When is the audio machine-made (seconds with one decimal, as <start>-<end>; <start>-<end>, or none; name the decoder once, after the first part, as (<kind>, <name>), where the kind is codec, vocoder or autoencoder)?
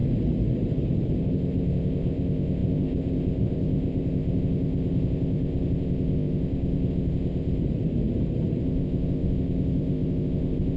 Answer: 1.2-7.6 (codec, ZipCodec); 8.6-10.8